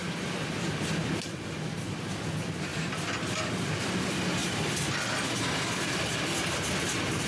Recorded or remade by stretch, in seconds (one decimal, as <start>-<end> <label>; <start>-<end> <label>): 0.0-2.3 remade; 2.3-2.7 recorded; 2.7-3.8 remade; 3.8-4.4 recorded; 4.4-6.0 remade; 6.0-7.3 recorded